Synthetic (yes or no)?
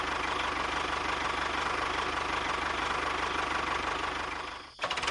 no